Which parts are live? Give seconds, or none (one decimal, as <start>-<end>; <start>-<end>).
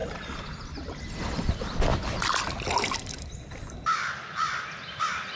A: 0.0-5.4